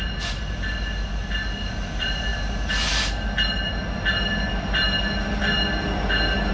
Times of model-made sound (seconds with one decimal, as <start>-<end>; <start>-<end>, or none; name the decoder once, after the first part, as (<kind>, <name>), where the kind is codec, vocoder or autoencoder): none